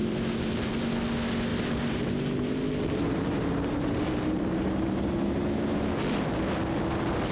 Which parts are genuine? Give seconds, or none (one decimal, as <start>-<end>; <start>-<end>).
0.7-1.5; 5.9-7.3